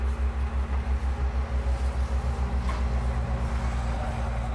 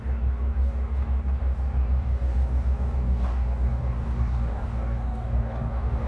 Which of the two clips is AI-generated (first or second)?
second